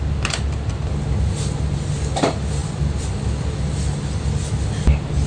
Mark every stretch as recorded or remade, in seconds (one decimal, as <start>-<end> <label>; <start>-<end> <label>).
0.0-5.3 recorded